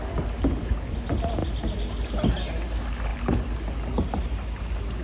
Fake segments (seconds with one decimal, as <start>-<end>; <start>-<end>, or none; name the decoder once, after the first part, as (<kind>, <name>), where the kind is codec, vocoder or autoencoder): none